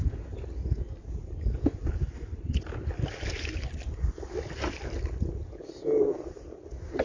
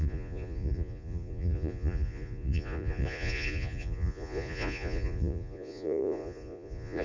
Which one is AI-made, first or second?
second